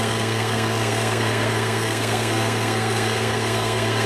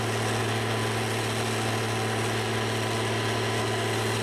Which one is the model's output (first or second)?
first